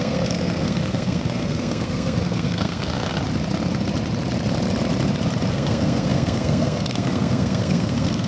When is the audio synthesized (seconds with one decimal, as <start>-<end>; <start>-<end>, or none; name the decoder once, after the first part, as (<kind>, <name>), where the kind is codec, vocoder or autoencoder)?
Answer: 0.0-3.1 (codec, SNAC); 5.5-8.3